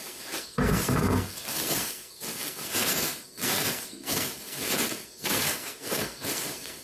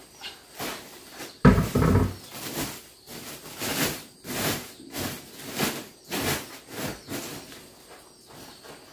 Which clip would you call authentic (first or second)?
second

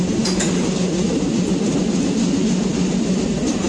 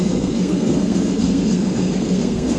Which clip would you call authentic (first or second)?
first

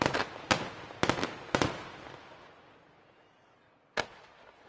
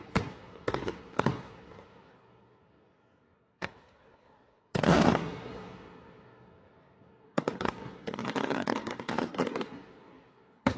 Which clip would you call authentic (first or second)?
first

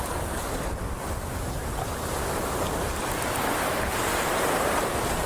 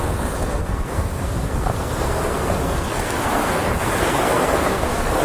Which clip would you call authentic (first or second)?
first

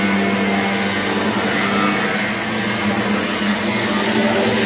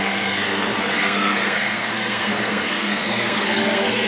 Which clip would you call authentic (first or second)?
first